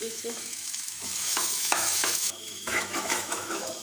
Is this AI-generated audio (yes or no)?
yes